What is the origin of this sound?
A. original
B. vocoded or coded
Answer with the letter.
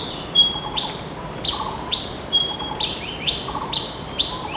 B